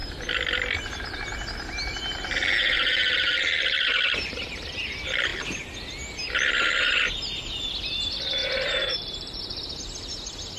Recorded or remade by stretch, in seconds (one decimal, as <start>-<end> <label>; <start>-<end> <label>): 0.0-8.4 recorded; 8.4-9.4 remade; 9.4-10.6 recorded